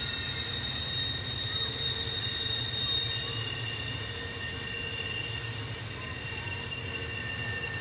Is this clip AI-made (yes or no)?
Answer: no